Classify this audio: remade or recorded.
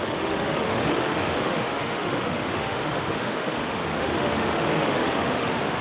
remade